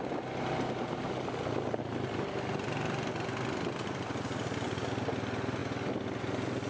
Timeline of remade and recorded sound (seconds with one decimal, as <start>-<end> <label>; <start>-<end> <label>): 0.0-6.7 recorded